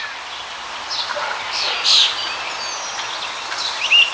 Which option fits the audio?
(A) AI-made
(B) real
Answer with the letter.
B